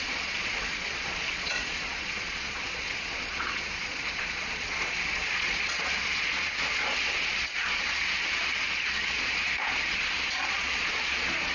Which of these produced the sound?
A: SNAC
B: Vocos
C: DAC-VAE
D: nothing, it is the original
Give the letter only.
B